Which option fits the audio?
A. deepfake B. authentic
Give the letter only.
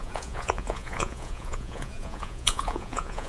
A